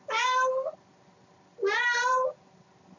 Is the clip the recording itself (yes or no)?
yes